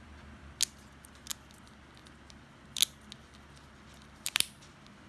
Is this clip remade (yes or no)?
no